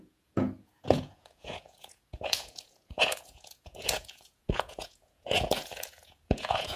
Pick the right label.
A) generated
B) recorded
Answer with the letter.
A